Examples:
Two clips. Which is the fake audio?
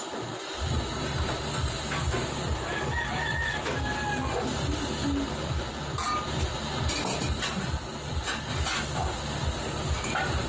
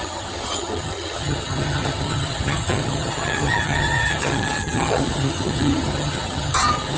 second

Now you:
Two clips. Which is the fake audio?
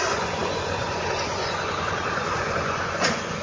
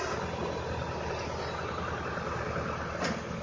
first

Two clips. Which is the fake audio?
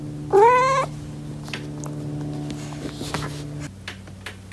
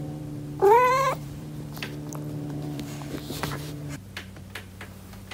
second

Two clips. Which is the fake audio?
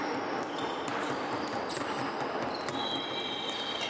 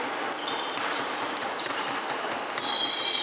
second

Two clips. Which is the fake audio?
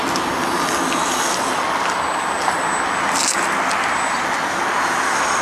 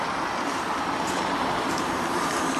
second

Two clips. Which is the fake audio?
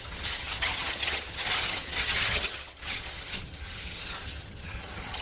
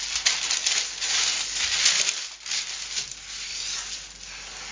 first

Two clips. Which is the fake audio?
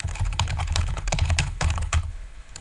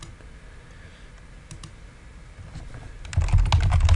first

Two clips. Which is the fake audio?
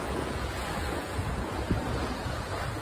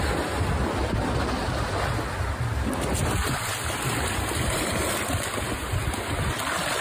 first